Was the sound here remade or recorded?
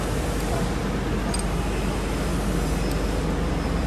recorded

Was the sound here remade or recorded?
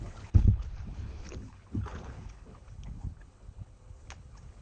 remade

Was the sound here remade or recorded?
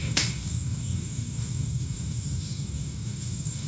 remade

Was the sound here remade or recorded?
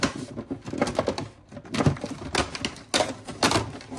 recorded